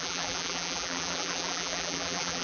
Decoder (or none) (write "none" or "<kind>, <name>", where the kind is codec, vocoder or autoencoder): vocoder, BigVGAN v2